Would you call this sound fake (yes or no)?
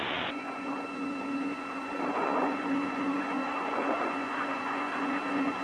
yes